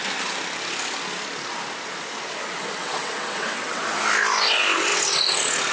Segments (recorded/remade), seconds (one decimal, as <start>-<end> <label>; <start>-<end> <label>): 0.0-2.8 recorded; 2.8-3.8 remade; 3.8-5.7 recorded